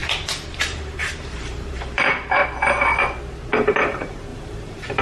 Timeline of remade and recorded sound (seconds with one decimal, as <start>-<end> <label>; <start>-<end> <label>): 0.0-0.5 recorded; 0.5-2.4 remade; 2.4-3.6 recorded; 3.6-5.0 remade